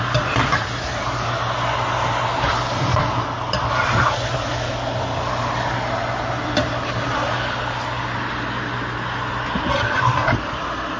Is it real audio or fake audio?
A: real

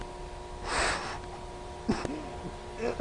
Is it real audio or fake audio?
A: real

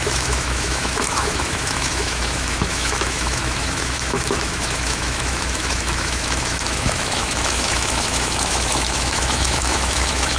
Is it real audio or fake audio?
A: fake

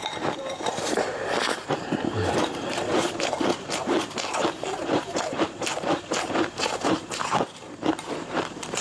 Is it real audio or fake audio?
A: fake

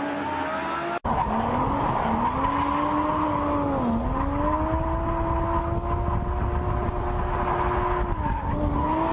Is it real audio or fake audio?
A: real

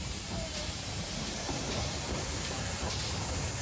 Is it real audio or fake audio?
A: fake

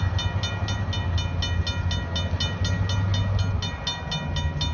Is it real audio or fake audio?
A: real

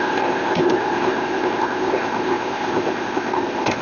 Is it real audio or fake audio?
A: fake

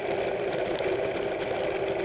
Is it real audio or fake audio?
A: real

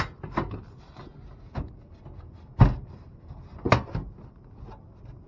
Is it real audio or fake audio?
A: real